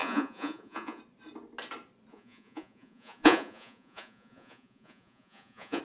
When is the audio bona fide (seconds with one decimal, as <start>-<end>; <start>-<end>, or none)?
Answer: 1.0-2.1